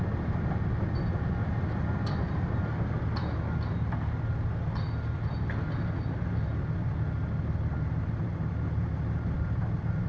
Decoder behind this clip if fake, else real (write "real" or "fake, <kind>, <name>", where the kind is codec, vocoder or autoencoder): real